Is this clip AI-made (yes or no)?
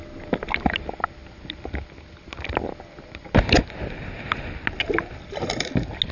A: no